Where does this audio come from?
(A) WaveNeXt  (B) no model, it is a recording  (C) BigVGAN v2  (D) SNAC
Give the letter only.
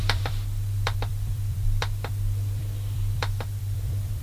C